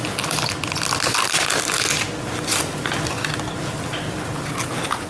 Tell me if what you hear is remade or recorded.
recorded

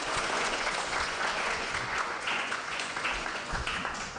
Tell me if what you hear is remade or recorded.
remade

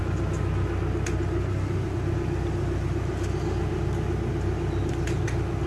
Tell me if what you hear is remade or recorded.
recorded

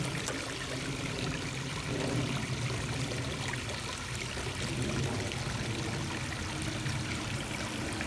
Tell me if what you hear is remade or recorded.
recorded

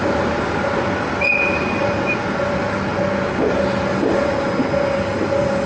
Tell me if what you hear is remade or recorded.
recorded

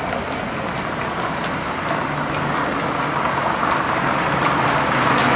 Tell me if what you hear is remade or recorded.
recorded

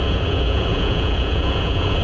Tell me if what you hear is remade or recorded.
remade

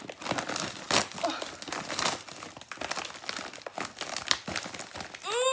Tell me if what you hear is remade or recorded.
recorded